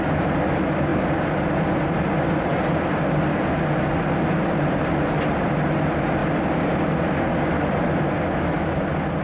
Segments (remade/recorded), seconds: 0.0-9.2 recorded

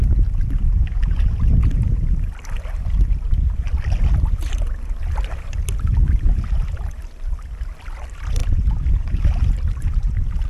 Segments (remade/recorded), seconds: 0.0-10.5 recorded

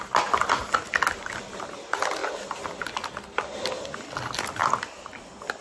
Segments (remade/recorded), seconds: 0.0-5.6 recorded

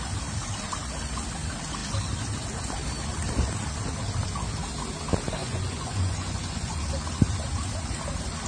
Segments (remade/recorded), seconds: 0.0-5.4 recorded; 5.4-6.8 remade; 6.8-8.5 recorded

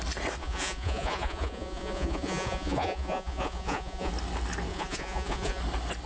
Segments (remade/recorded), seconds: 0.0-0.4 recorded; 0.4-4.1 remade; 4.1-4.7 recorded; 4.7-5.6 remade; 5.6-6.1 recorded